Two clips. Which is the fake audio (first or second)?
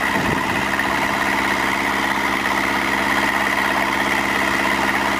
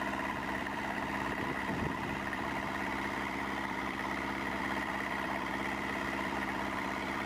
second